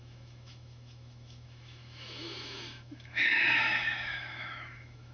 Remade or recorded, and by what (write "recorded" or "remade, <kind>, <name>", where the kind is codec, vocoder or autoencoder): remade, autoencoder, DAC-VAE